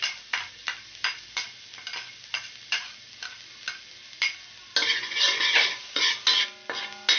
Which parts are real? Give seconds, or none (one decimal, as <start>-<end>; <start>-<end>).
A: 0.0-4.9; 6.0-7.2